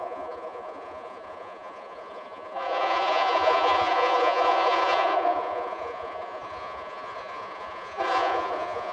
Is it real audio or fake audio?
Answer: fake